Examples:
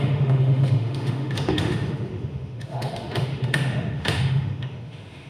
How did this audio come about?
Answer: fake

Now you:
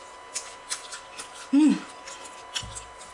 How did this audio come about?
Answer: real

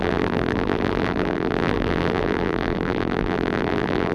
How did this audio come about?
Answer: fake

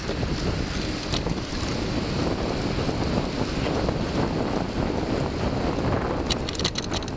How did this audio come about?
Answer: real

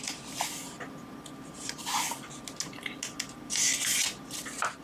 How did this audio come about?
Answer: real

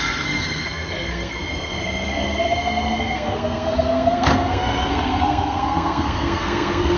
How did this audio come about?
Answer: fake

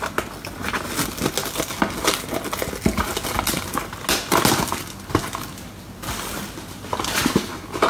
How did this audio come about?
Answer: real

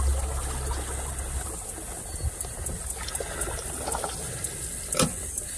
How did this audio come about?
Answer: real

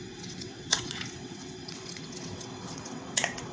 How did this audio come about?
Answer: fake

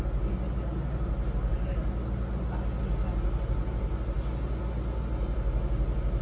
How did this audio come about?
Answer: real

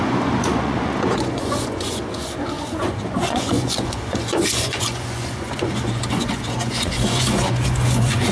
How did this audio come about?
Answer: fake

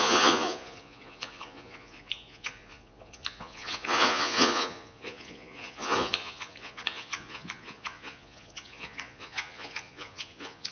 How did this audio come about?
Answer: fake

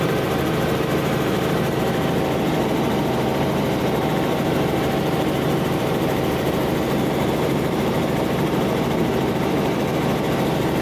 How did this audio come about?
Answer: fake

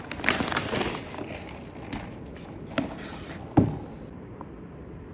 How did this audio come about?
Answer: real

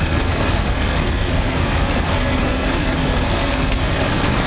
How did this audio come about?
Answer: fake